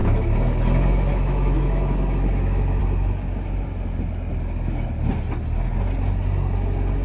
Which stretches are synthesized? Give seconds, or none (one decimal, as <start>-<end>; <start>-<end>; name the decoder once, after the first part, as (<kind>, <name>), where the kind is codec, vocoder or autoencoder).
0.0-2.8 (autoencoder, DAC-VAE)